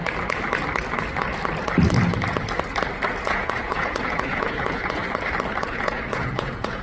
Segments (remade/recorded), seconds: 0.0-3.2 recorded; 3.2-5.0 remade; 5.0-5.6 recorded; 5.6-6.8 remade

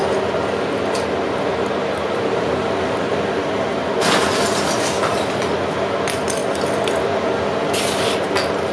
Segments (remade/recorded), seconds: 0.0-8.7 recorded

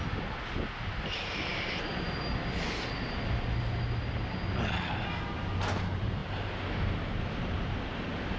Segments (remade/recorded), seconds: 0.0-8.4 recorded

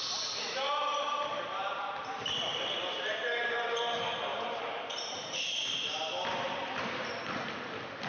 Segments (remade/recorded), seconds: 0.0-0.9 recorded; 0.9-1.7 remade; 1.7-2.5 recorded; 2.5-3.8 remade; 3.8-4.3 recorded; 4.3-7.1 remade; 7.1-8.1 recorded

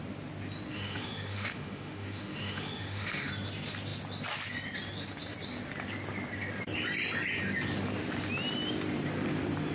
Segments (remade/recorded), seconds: 0.0-0.7 recorded; 0.7-3.3 remade; 3.3-9.7 recorded

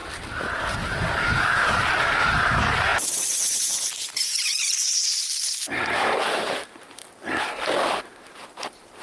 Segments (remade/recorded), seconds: 0.0-0.7 recorded; 0.7-7.0 remade; 7.0-8.0 recorded; 8.0-9.0 remade

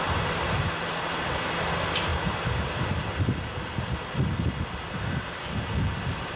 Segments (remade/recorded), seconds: 0.0-6.4 recorded